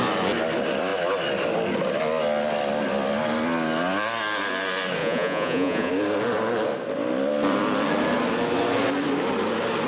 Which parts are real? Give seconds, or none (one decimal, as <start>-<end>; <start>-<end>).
0.0-5.0; 5.9-9.9